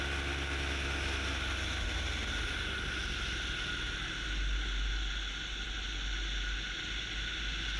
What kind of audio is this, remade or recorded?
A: recorded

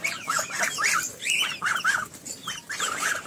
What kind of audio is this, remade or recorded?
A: remade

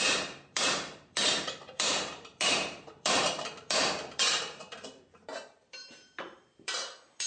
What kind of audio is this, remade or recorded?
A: remade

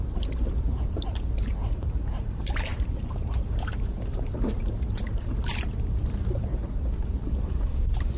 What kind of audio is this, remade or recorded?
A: remade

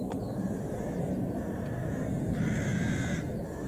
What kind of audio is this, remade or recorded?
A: recorded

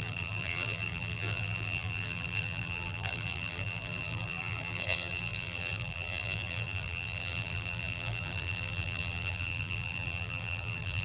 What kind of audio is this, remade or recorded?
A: remade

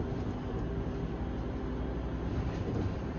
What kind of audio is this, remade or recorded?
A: recorded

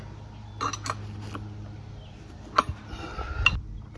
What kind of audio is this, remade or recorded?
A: recorded